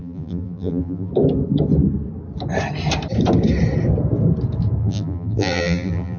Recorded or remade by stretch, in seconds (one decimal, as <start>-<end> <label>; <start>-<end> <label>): 0.0-1.1 remade; 1.1-4.8 recorded; 4.8-6.2 remade